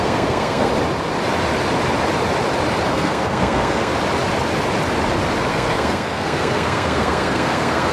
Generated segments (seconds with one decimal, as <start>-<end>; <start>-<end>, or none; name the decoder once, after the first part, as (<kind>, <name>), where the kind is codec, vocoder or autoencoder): 0.0-0.7 (codec, SNAC); 2.9-3.9; 5.5-7.9